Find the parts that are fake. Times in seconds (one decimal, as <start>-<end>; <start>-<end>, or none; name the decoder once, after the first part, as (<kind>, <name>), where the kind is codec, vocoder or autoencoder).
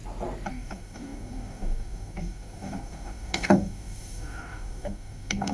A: 0.5-5.5 (codec, DAC)